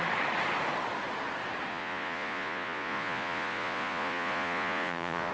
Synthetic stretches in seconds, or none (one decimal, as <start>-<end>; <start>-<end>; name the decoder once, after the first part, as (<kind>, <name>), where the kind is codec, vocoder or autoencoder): 1.7-5.3 (vocoder, Vocos)